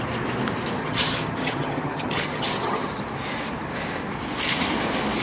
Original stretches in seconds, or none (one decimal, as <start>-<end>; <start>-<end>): 0.0-0.8; 3.0-5.2